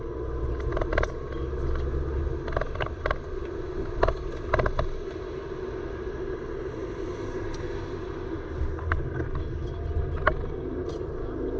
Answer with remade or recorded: recorded